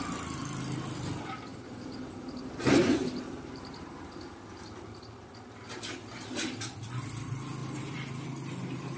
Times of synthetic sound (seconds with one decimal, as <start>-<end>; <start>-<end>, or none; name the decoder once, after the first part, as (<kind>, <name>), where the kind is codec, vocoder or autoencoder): 1.5-4.1 (vocoder, BigVGAN v2)